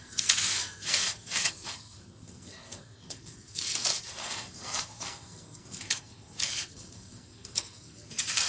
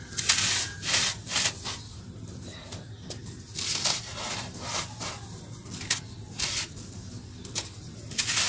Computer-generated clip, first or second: first